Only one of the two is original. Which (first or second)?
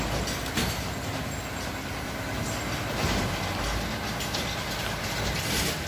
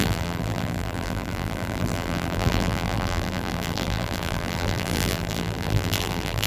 first